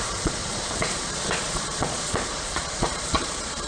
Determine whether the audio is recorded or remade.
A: remade